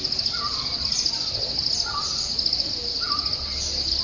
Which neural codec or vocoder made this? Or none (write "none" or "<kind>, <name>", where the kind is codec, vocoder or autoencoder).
none